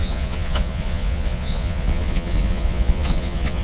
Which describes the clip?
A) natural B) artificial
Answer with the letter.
B